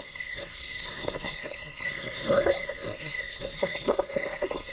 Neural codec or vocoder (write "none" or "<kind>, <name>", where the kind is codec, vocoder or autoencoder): codec, SNAC